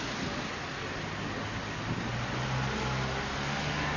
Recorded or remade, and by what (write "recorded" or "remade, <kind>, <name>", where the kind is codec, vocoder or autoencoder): recorded